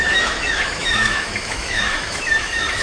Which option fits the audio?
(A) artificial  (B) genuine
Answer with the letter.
A